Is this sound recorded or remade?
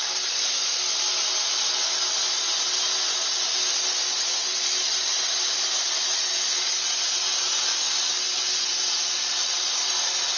recorded